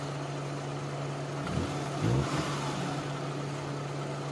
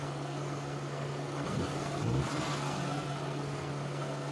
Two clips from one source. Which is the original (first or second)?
first